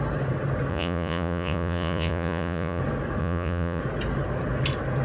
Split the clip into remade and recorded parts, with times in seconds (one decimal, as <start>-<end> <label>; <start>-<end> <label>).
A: 0.0-0.7 recorded; 0.7-2.8 remade; 2.8-3.2 recorded; 3.2-3.8 remade; 3.8-5.0 recorded